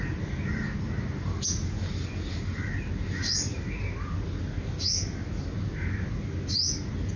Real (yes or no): yes